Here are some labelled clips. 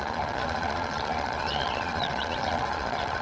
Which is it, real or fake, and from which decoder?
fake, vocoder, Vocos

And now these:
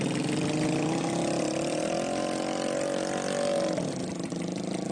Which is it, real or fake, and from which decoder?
real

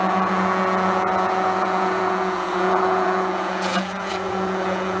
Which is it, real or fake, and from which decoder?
fake, vocoder, Vocos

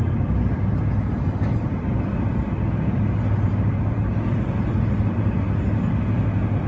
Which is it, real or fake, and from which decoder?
real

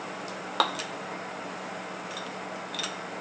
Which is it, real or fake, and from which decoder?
real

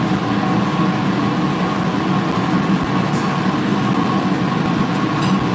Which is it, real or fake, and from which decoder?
real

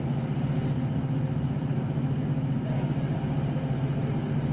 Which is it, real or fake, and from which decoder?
real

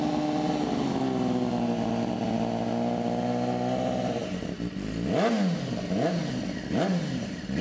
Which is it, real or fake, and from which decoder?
real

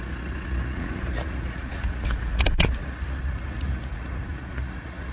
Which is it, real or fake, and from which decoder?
fake, vocoder, Vocos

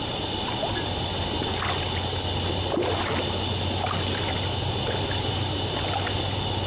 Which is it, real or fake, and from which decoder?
real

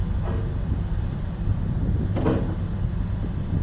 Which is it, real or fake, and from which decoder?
real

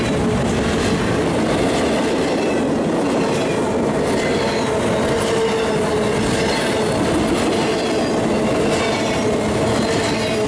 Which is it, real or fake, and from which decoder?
real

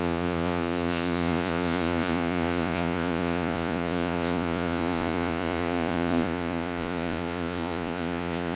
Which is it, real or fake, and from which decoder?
fake, vocoder, Vocos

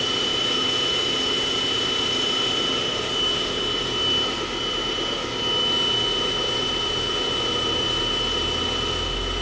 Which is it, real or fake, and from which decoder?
real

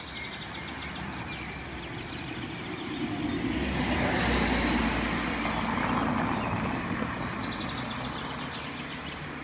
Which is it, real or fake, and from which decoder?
real